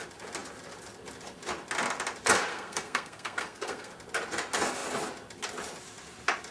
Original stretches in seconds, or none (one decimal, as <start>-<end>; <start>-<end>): 0.0-2.5; 3.9-6.5